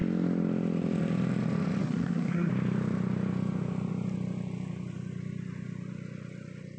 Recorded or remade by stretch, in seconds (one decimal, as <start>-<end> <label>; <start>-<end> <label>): 0.0-1.8 recorded; 1.8-2.5 remade; 2.5-6.8 recorded